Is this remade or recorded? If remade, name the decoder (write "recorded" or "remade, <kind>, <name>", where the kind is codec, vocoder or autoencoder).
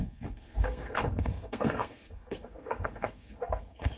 remade, codec, SNAC